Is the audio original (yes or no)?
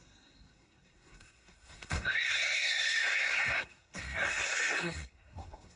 no